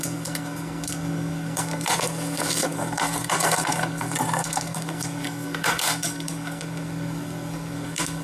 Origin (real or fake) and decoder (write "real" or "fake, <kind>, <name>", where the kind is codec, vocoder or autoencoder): fake, codec, SNAC